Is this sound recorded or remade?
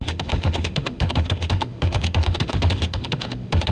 remade